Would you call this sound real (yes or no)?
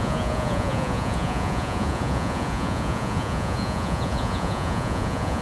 no